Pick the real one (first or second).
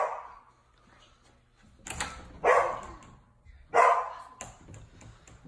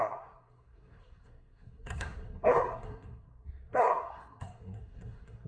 first